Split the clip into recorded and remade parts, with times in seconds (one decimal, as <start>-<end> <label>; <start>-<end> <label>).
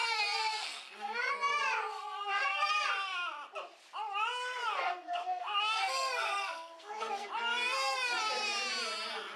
0.0-1.3 remade; 1.3-1.9 recorded; 1.9-2.7 remade; 2.7-4.7 recorded; 4.7-7.3 remade; 7.3-9.4 recorded